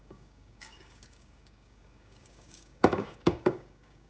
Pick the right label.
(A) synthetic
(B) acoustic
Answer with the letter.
A